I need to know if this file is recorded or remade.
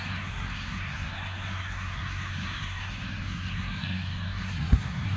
remade